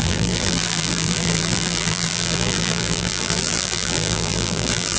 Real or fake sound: fake